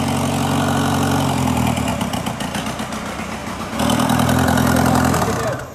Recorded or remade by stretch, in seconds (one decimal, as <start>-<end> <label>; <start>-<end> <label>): 0.0-1.9 recorded; 1.9-2.6 remade; 2.6-3.4 recorded; 3.4-5.2 remade; 5.2-5.7 recorded